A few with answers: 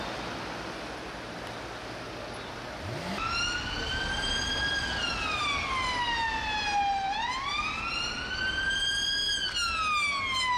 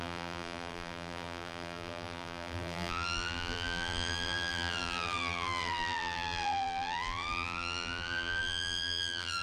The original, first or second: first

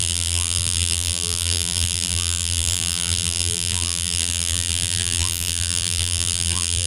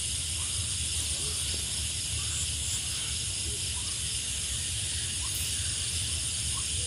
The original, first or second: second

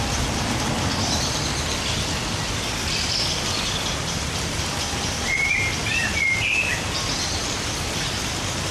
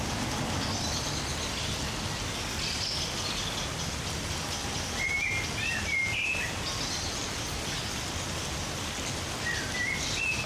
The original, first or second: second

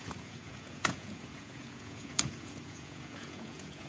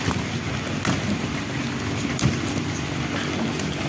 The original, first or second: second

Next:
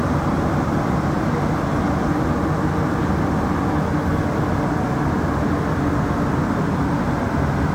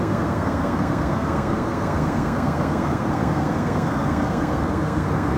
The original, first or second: first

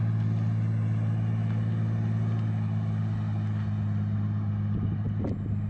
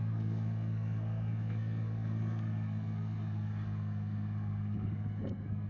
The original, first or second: first